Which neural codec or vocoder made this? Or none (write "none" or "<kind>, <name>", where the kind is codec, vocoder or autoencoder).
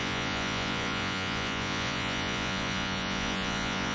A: vocoder, Vocos